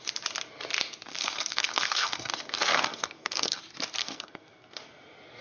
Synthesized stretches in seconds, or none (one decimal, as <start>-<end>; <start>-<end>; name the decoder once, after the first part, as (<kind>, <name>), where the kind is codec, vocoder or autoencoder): 1.1-3.6 (codec, SNAC); 4.0-4.8